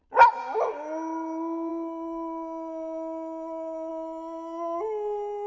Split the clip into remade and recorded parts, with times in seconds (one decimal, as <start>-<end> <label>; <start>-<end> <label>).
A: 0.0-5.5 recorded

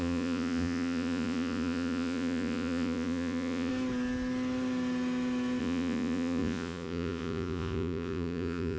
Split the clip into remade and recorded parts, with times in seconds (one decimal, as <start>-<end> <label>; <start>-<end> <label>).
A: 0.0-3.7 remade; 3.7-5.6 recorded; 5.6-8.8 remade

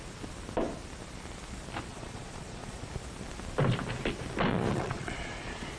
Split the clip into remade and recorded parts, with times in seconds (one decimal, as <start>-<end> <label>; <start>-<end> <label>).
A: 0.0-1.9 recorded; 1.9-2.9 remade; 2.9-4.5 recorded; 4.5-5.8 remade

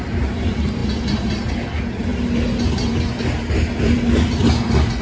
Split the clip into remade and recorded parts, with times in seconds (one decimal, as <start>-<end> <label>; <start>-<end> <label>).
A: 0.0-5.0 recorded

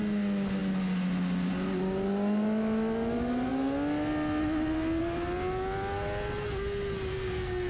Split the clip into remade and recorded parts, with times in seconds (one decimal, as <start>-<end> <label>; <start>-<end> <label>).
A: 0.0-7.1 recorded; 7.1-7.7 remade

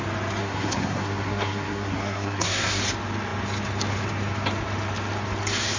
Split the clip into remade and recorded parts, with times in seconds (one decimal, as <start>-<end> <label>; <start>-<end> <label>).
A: 0.0-0.4 recorded; 0.4-2.8 remade; 2.8-5.8 recorded